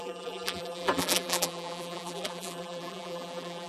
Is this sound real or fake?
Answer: fake